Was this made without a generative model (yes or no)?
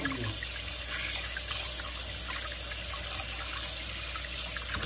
yes